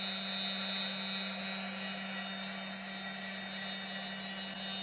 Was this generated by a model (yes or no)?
no